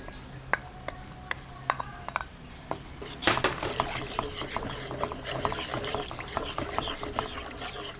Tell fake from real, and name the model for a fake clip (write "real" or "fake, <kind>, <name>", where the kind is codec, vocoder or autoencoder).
real